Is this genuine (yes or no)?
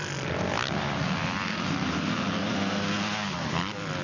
yes